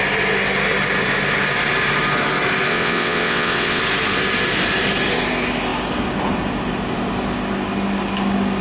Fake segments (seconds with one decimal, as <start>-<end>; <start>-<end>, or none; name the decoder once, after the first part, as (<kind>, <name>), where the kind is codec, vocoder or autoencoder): 2.7-3.8 (vocoder, WaveNeXt)